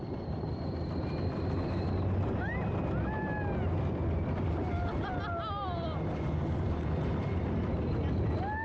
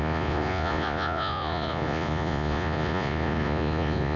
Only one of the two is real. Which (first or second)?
first